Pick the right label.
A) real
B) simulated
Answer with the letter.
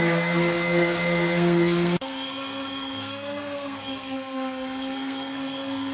B